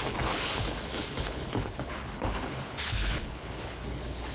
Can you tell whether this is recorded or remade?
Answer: remade